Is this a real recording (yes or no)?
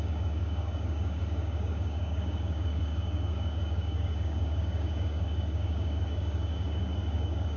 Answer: no